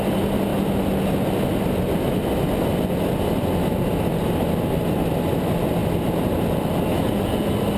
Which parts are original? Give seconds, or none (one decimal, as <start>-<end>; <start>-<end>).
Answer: 0.0-7.8